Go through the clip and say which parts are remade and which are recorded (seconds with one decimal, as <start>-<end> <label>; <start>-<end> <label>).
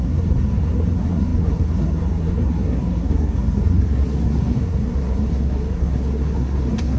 0.0-7.0 remade